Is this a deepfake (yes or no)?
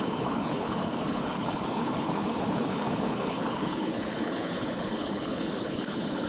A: yes